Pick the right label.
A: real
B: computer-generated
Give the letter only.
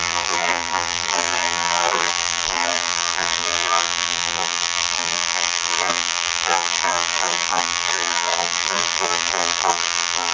B